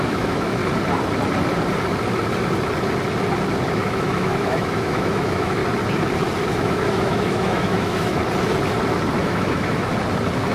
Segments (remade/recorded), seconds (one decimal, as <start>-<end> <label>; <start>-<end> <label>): 0.0-0.6 remade; 0.6-3.7 recorded; 3.7-5.6 remade; 5.6-6.5 recorded; 6.5-8.2 remade; 8.2-9.2 recorded; 9.2-9.9 remade; 9.9-10.5 recorded